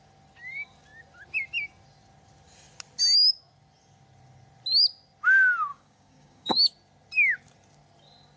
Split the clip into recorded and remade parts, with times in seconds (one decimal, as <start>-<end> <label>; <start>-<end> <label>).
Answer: 0.0-5.7 recorded; 5.7-6.7 remade; 6.7-8.4 recorded